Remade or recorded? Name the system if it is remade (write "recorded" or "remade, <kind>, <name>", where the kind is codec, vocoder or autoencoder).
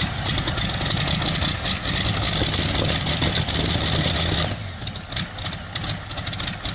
recorded